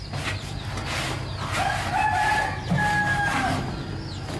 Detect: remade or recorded recorded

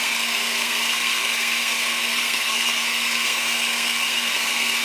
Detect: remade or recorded remade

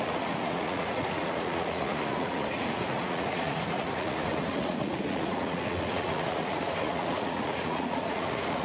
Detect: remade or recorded remade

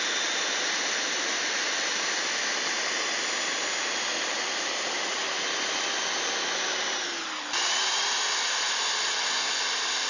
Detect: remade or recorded remade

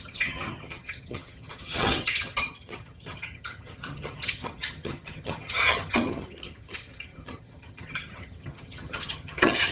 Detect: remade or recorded remade